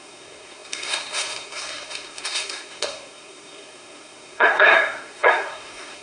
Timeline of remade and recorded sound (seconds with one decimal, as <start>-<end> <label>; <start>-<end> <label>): 0.0-6.0 remade